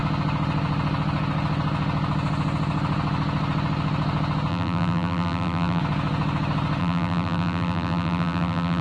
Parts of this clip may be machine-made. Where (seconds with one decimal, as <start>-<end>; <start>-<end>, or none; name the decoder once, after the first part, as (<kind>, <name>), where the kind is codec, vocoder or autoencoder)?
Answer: 4.5-5.8 (vocoder, BigVGAN v2); 6.8-8.8